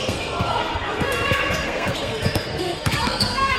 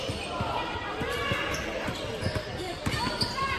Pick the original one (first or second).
second